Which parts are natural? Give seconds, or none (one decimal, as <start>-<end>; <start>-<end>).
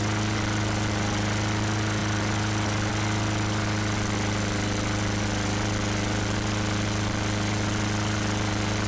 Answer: 0.0-8.9